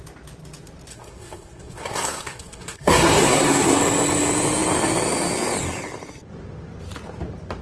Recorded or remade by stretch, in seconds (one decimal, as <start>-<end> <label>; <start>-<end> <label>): 0.0-0.9 recorded; 0.9-3.8 remade; 3.8-7.6 recorded